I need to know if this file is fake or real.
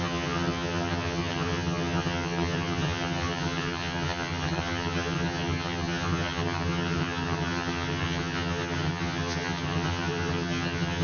fake